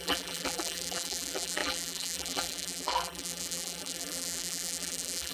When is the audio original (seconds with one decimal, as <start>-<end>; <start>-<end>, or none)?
none

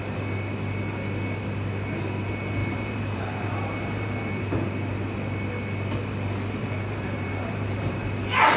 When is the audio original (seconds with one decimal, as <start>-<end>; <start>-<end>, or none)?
0.0-2.6; 4.7-6.6; 8.0-8.6

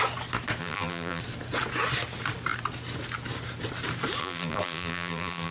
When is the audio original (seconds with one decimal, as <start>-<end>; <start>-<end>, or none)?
0.0-0.6; 1.2-4.2